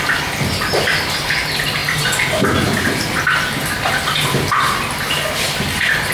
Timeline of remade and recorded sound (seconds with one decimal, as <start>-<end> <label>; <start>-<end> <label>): 0.0-6.1 recorded